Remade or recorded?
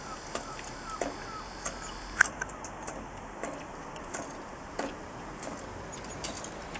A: recorded